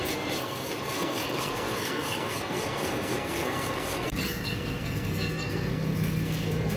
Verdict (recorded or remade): remade